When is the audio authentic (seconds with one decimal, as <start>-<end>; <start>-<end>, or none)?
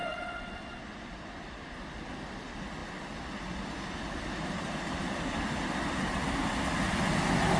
0.8-7.6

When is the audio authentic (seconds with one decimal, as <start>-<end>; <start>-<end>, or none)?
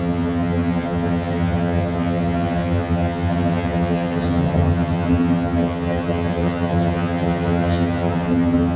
none